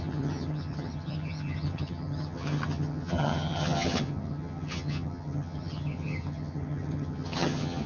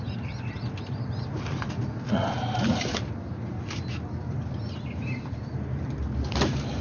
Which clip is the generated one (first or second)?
first